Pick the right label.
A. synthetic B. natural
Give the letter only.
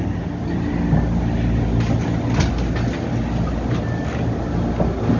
B